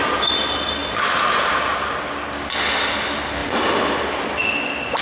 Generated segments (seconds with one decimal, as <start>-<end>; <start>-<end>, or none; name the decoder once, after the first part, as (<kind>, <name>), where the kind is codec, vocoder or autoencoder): none

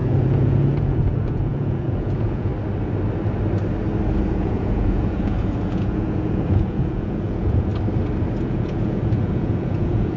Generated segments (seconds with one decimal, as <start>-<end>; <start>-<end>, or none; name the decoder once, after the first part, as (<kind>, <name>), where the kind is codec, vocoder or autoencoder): 0.0-2.5 (vocoder, Vocos); 4.3-7.7; 8.4-10.2

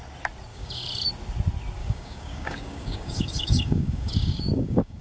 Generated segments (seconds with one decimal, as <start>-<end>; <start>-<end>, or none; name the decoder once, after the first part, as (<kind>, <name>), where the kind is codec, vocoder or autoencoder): 0.5-1.1 (codec, DAC); 1.8-5.0

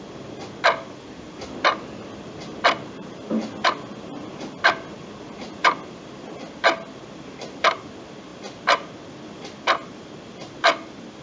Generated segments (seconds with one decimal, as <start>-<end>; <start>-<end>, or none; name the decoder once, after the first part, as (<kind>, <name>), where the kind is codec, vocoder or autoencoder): none

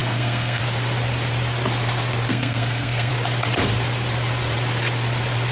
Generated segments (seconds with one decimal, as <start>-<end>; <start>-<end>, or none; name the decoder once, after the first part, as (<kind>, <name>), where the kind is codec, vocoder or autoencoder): 0.0-0.6 (codec, SNAC); 2.3-3.1

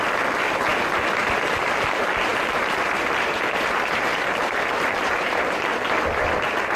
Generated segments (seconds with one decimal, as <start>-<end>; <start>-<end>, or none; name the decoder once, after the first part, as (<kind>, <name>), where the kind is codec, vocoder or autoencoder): 2.3-5.6 (vocoder, BigVGAN v2)